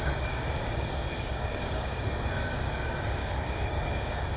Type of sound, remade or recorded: remade